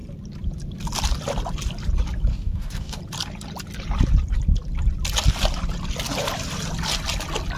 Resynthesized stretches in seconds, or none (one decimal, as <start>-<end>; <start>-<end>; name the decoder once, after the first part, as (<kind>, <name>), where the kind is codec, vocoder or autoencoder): 2.3-3.0 (codec, DAC)